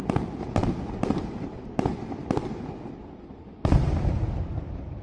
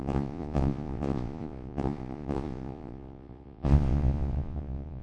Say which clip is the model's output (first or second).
second